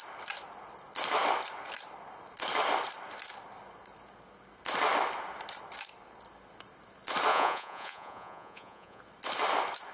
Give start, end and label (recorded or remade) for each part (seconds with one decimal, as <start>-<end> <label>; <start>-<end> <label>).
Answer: 0.0-7.3 recorded; 7.3-9.0 remade; 9.0-9.9 recorded